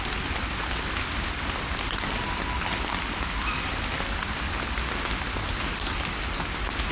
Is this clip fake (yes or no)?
no